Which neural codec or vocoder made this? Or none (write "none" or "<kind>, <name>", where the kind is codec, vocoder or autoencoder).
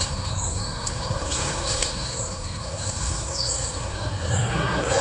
codec, SNAC